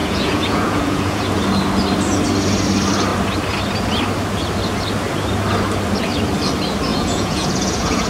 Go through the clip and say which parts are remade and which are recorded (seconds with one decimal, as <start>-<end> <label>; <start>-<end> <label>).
0.0-1.2 remade; 1.2-6.9 recorded; 6.9-8.1 remade